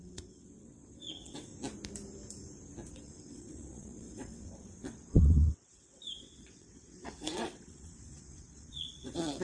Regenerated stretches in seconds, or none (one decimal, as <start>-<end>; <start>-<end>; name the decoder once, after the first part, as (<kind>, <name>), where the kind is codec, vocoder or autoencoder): 0.0-1.5 (vocoder, WaveNeXt); 2.9-9.4